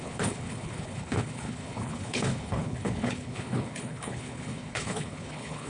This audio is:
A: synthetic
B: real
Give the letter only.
A